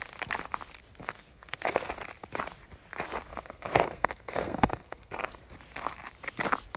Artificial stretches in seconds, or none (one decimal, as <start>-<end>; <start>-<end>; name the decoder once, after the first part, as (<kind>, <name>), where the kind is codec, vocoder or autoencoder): 1.0-1.9 (codec, SNAC); 3.3-5.4